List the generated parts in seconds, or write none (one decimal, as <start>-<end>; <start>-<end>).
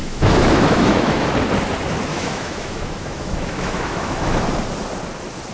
0.0-1.3; 2.1-4.4